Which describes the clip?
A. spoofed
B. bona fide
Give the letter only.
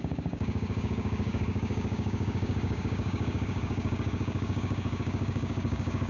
A